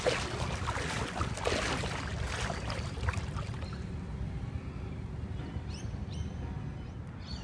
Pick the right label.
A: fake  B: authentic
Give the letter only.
B